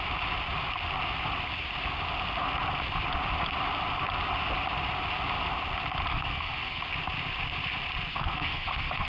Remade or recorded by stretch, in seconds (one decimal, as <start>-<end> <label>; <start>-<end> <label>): 0.0-6.1 recorded; 6.1-6.8 remade; 6.8-8.1 recorded; 8.1-9.1 remade